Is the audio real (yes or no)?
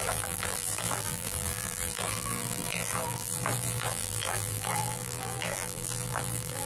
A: no